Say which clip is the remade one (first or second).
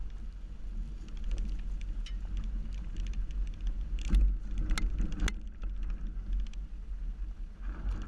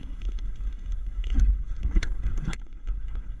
second